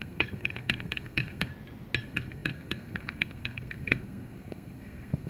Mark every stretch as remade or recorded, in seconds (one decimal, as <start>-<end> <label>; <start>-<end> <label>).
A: 0.0-1.5 remade; 1.5-2.0 recorded; 2.0-5.3 remade